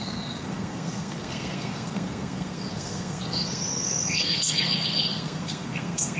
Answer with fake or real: fake